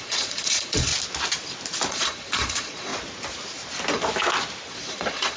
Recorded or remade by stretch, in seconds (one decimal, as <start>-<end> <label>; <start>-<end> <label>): 0.0-0.9 remade; 0.9-1.9 recorded; 1.9-2.9 remade; 2.9-4.7 recorded; 4.7-5.4 remade